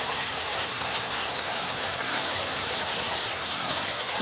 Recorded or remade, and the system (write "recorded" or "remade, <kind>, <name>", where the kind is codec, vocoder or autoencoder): remade, codec, SNAC